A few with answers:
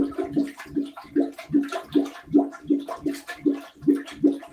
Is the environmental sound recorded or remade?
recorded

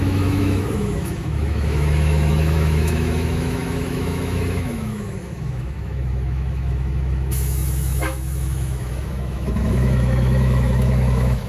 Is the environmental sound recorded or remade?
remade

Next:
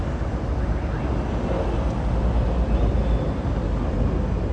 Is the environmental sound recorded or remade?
recorded